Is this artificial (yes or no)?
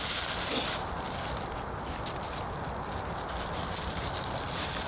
no